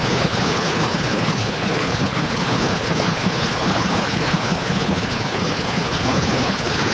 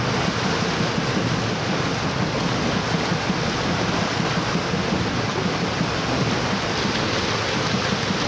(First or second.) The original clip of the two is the second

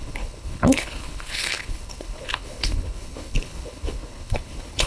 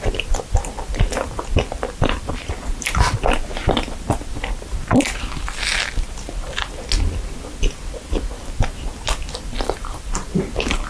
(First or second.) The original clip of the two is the second